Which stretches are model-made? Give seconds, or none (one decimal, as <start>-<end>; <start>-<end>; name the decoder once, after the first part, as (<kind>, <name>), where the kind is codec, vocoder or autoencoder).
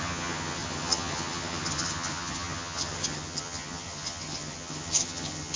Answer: 0.0-5.6 (vocoder, HiFi-GAN)